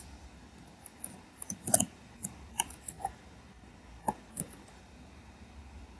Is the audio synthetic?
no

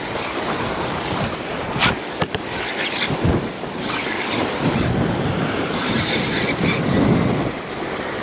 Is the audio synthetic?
no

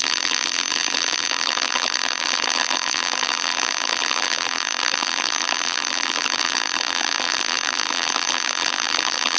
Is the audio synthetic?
yes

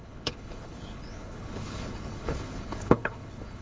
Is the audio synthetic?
yes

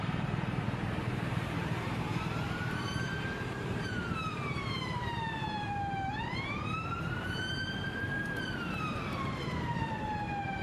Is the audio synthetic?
yes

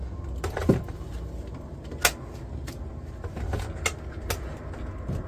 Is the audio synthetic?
no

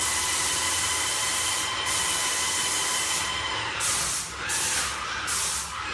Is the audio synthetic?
no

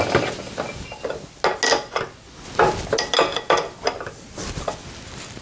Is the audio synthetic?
no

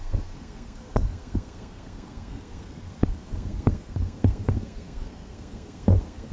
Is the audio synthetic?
yes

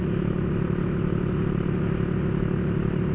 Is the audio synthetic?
no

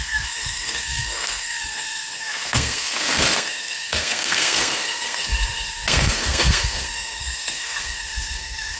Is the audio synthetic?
yes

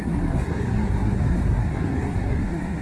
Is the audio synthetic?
yes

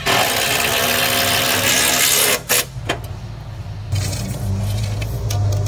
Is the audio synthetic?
no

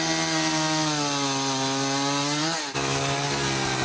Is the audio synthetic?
no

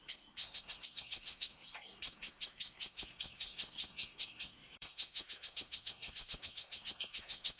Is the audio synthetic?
yes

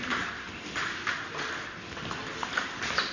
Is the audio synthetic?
no